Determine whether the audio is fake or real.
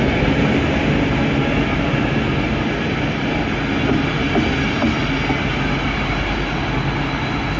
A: real